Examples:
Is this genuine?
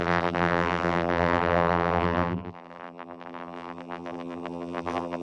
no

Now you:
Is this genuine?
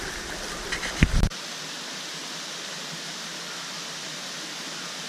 yes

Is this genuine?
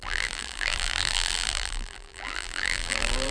no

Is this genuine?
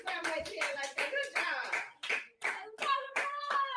no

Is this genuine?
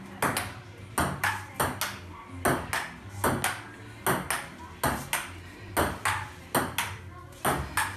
yes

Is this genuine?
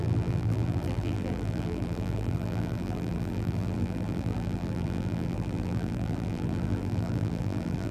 no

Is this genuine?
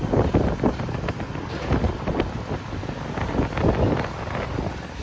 yes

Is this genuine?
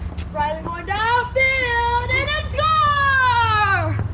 yes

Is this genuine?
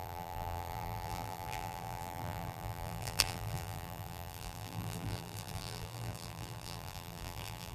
no